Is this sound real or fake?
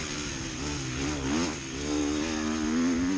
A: real